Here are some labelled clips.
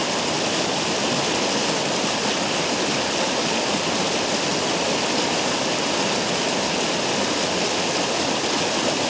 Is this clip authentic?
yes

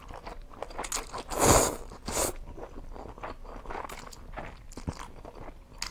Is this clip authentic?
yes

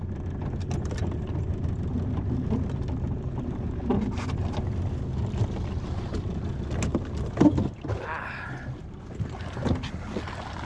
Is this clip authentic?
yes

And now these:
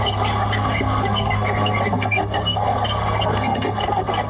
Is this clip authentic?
no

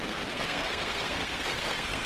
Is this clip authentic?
no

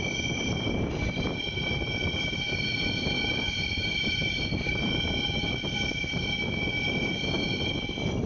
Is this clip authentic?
yes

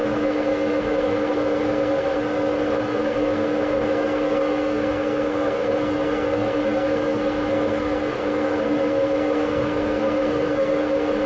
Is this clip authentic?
no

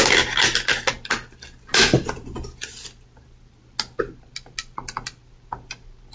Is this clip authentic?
yes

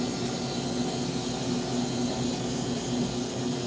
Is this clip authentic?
yes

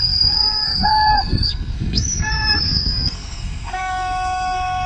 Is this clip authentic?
no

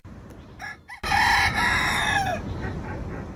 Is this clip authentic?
yes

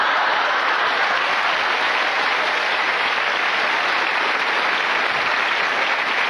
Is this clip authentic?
yes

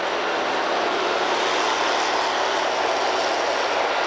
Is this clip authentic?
yes